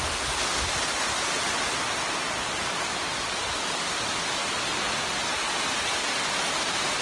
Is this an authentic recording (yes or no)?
yes